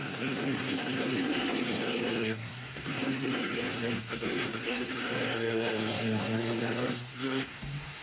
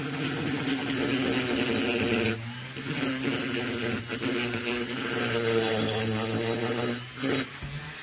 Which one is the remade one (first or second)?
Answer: first